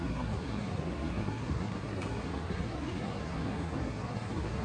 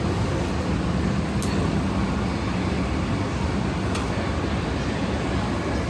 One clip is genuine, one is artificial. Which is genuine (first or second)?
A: second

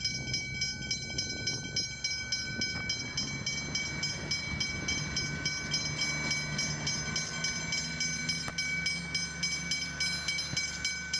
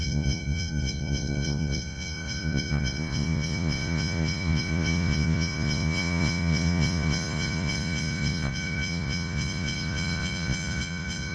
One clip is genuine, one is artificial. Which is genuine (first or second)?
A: first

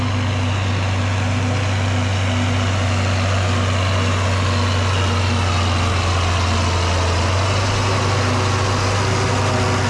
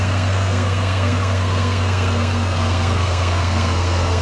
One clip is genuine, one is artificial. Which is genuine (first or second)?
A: first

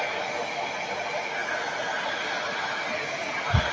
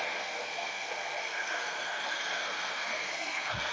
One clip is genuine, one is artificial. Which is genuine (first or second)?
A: first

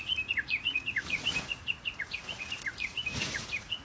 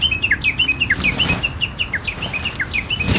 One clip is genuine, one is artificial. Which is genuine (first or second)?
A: second